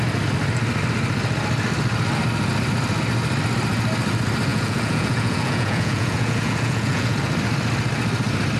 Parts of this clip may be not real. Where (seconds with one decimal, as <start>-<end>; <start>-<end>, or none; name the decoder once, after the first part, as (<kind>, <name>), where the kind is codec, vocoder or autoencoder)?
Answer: 4.5-7.2 (vocoder, Vocos)